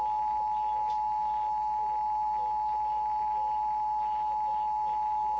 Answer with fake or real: real